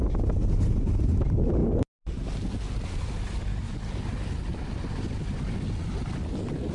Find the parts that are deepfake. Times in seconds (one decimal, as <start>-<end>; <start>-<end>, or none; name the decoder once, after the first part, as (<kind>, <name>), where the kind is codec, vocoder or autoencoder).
none